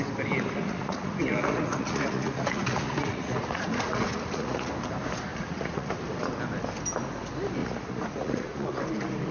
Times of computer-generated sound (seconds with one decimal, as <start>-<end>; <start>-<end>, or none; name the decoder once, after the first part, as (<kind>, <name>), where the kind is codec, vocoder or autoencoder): 0.6-4.7 (vocoder, Vocos); 5.3-6.0; 7.6-8.8